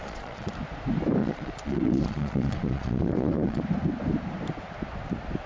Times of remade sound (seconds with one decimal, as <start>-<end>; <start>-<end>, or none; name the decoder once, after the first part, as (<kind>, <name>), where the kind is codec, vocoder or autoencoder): 0.0-0.5 (vocoder, Vocos); 1.2-3.6